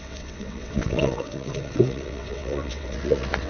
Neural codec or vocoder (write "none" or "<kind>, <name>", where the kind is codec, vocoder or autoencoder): vocoder, WaveNeXt